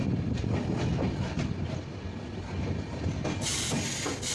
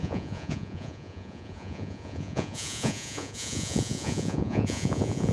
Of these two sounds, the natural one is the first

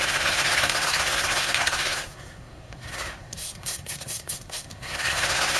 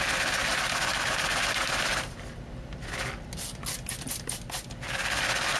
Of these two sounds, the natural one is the second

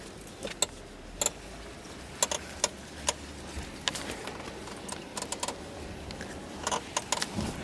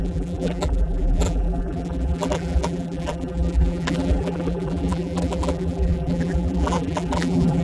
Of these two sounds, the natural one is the first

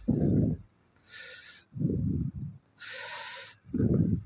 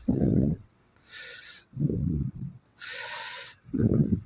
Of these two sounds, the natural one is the first